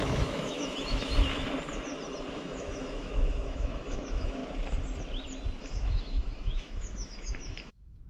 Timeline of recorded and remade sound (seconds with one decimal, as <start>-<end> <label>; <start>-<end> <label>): 0.0-1.1 remade; 1.1-2.3 recorded; 2.3-4.4 remade; 4.4-5.6 recorded; 5.6-8.1 remade